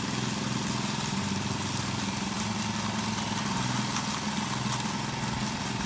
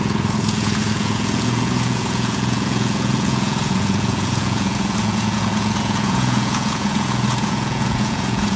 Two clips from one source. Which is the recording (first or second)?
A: first